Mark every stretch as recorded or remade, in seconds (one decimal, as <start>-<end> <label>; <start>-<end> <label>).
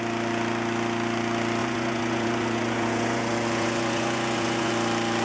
0.0-1.6 recorded; 1.6-4.7 remade; 4.7-5.2 recorded